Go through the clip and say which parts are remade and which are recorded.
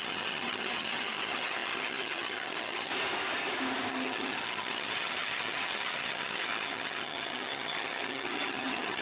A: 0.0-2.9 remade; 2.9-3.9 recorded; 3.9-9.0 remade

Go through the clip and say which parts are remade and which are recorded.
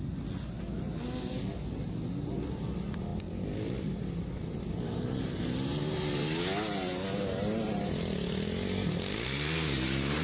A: 0.0-10.2 recorded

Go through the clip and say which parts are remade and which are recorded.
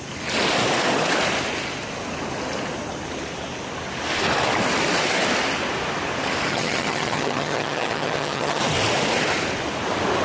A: 0.0-6.5 recorded; 6.5-8.6 remade; 8.6-10.2 recorded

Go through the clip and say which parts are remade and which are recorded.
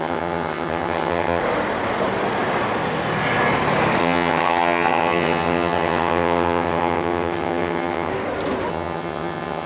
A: 0.0-1.4 remade; 1.4-4.0 recorded; 4.0-8.1 remade; 8.1-8.7 recorded; 8.7-9.7 remade